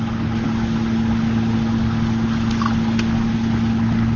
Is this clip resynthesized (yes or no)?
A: no